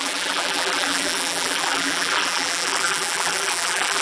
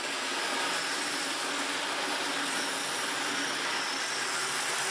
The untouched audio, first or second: second